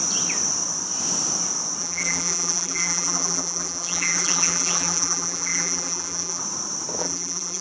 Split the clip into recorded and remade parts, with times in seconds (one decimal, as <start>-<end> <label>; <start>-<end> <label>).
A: 0.0-1.8 recorded; 1.8-6.4 remade; 6.4-7.0 recorded; 7.0-7.6 remade